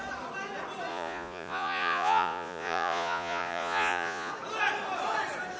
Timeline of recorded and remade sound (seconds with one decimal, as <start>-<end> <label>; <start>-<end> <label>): 0.0-0.9 recorded; 0.9-4.3 remade; 4.3-5.6 recorded